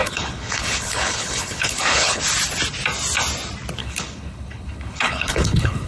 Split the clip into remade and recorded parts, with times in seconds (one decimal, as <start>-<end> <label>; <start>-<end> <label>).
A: 0.0-2.2 remade; 2.2-3.8 recorded; 3.8-5.9 remade